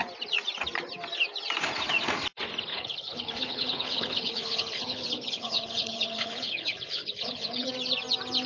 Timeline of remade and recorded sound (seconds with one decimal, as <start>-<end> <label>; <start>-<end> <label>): 0.0-2.7 recorded; 2.7-7.7 remade; 7.7-8.5 recorded